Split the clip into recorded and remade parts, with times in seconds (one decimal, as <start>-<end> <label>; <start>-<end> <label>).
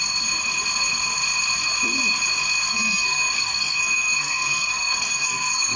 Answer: 0.0-2.7 recorded; 2.7-5.8 remade